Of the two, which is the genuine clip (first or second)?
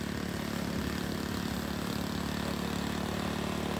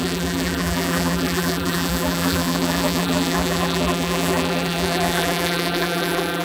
first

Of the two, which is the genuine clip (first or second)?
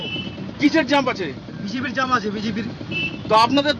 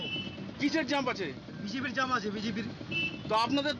second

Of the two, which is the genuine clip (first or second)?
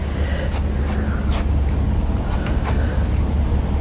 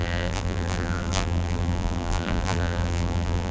first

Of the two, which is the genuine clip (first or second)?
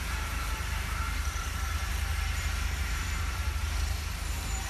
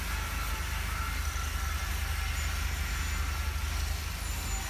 second